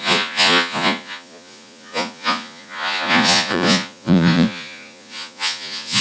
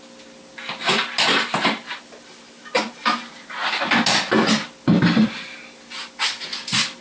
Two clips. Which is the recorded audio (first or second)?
second